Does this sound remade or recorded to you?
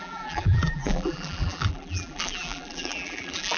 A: remade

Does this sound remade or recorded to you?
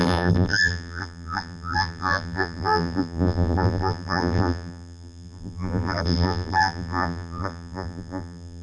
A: remade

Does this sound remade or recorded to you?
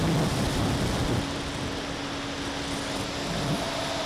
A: recorded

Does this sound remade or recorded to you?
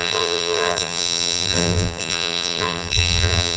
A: remade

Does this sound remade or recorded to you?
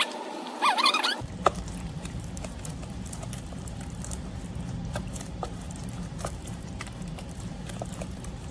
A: remade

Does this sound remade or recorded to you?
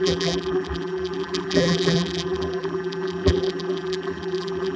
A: remade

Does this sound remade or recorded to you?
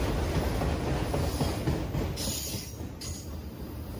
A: recorded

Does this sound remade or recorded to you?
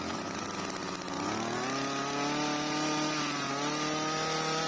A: recorded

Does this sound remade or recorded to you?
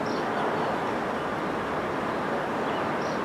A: recorded